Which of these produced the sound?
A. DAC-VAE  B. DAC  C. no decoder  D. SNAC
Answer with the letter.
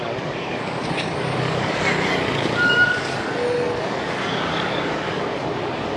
B